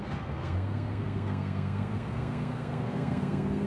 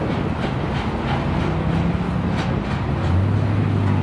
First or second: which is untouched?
second